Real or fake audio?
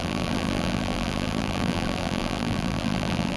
fake